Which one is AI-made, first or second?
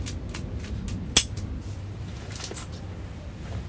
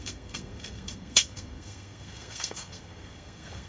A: second